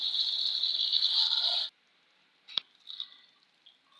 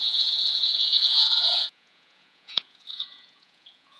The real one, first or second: first